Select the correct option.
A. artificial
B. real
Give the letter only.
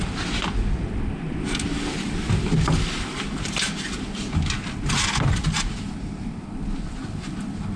B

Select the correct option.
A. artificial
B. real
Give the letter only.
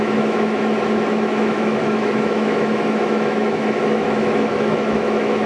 A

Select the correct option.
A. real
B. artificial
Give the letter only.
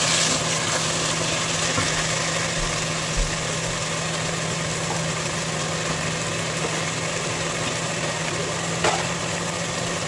A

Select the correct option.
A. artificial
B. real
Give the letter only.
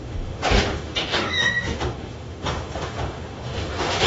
A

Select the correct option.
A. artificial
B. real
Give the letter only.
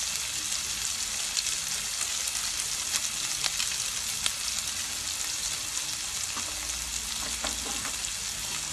B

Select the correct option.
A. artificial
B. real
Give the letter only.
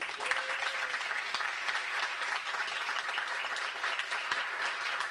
B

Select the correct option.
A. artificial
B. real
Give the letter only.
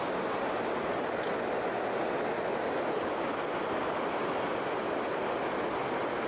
B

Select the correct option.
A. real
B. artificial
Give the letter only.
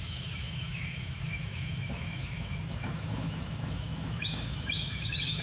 B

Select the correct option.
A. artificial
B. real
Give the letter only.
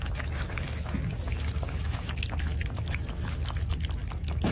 A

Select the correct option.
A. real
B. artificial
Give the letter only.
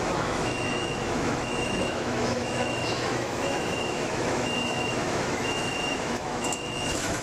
B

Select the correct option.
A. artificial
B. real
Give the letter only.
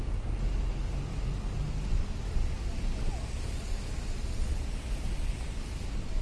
B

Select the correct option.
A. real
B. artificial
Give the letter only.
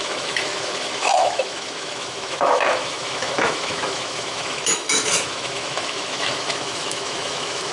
B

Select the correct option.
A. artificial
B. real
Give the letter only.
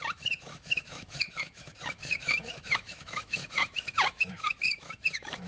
A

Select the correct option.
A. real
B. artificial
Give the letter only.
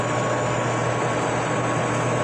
A